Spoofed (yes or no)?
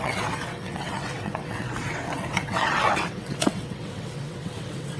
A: yes